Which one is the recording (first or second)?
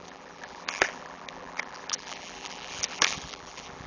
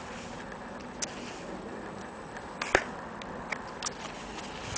second